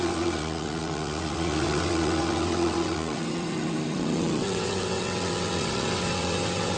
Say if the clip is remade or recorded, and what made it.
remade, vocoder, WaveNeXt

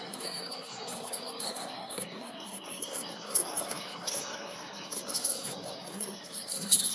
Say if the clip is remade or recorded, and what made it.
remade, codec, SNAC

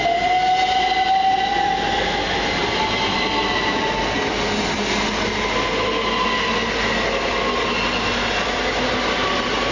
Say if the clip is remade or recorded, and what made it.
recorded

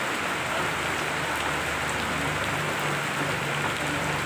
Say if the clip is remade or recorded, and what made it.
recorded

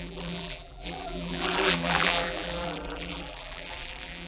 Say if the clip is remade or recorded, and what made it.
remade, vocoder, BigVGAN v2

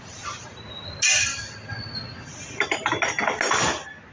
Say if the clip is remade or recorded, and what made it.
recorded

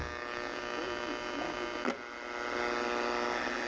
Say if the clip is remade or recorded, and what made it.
recorded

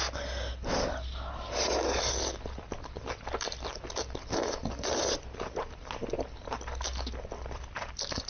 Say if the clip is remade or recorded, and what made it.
recorded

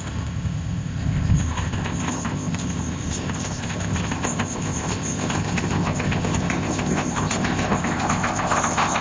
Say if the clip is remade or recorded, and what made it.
remade, codec, ZipCodec